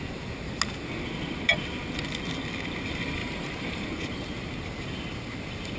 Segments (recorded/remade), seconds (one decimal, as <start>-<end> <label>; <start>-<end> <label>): 0.0-3.2 recorded; 3.2-3.8 remade; 3.8-5.8 recorded